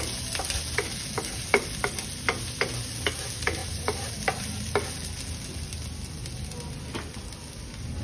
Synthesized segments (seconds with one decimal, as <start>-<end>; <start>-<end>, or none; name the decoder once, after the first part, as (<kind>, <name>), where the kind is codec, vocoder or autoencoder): 3.6-4.1 (vocoder, BigVGAN v2)